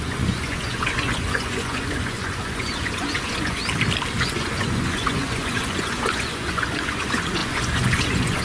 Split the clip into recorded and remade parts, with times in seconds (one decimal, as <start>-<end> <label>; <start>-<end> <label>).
0.0-3.6 remade; 3.6-4.2 recorded; 4.2-8.4 remade